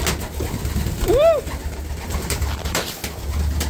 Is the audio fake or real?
real